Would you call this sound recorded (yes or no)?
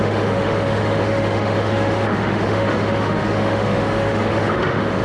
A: no